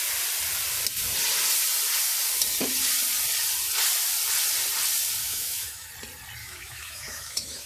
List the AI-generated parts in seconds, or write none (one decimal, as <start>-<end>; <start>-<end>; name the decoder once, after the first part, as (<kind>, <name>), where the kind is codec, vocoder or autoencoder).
5.2-5.9 (autoencoder, DAC-VAE); 6.4-7.7